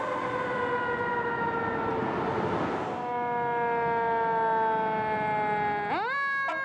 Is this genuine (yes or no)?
yes